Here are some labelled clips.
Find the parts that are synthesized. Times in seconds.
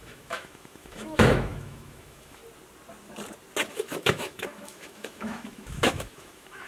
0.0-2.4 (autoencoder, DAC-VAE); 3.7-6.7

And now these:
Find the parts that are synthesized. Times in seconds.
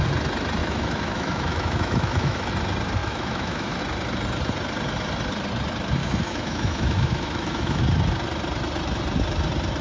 0.6-2.5 (autoencoder, DAC-VAE); 3.0-3.8; 6.0-7.8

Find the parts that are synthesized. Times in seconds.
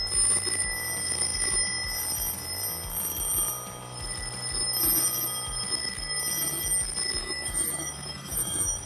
7.2-8.9 (autoencoder, DAC-VAE)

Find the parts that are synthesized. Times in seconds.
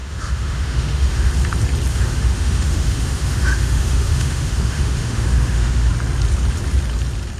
0.0-1.3 (autoencoder, DAC-VAE); 1.9-5.9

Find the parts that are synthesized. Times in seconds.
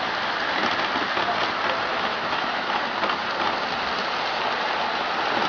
1.9-2.8 (autoencoder, DAC-VAE)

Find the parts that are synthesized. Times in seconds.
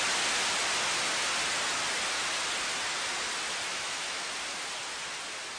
3.7-4.3 (autoencoder, DAC-VAE)